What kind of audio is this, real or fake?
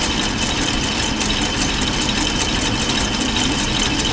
real